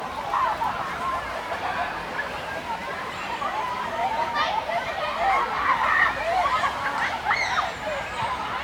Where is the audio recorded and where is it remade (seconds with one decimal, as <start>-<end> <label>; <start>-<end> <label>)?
0.0-2.8 recorded; 2.8-5.1 remade; 5.1-8.6 recorded